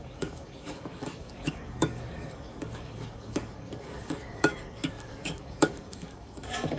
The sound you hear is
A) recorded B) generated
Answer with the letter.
B